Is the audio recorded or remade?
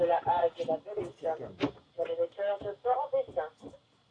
recorded